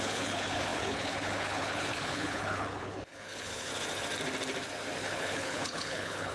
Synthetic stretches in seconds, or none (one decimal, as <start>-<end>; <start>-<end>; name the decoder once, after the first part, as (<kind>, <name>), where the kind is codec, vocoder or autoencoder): 0.0-3.7 (codec, HILCodec); 5.0-6.3